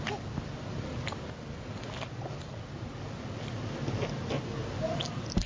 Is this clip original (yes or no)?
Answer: no